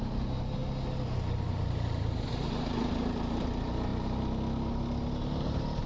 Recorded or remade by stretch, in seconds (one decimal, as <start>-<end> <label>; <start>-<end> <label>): 0.0-0.6 remade; 0.6-1.4 recorded; 1.4-3.9 remade; 3.9-5.2 recorded; 5.2-5.9 remade

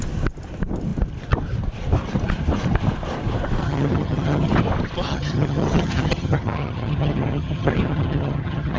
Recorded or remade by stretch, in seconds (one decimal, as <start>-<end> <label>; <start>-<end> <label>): 0.0-3.6 recorded; 3.6-4.5 remade; 4.5-5.1 recorded; 5.1-8.8 remade

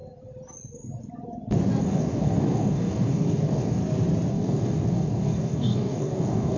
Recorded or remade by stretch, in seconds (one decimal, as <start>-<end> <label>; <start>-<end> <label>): 0.0-1.8 recorded; 1.8-3.8 remade; 3.8-4.3 recorded; 4.3-6.6 remade

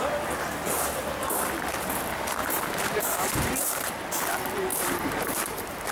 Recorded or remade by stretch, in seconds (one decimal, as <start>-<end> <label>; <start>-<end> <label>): 0.0-2.4 recorded; 2.4-3.9 remade; 3.9-4.7 recorded; 4.7-5.9 remade

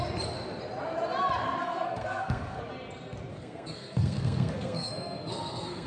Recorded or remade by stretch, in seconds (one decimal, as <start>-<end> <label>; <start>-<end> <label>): 0.0-1.6 recorded; 1.6-2.6 remade; 2.6-3.3 recorded; 3.3-5.9 remade

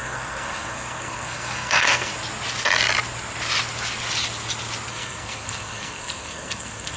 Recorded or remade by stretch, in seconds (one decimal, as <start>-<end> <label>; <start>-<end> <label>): 0.0-2.1 remade; 2.1-4.9 recorded; 4.9-7.0 remade

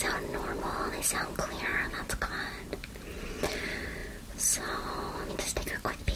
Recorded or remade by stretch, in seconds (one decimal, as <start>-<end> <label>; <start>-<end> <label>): 0.0-6.2 recorded